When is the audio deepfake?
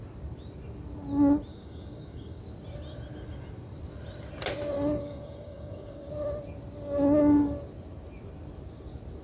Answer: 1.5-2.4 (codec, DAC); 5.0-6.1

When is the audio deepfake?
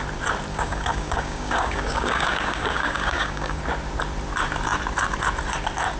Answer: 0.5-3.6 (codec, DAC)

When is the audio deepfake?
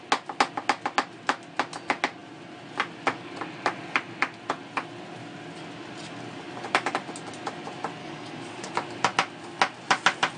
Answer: 8.0-8.7 (codec, DAC)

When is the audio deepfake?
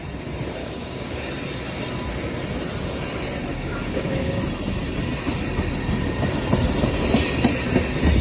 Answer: 0.6-1.3 (codec, DAC); 3.5-4.4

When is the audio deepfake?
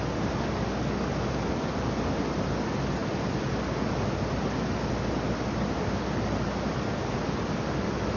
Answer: none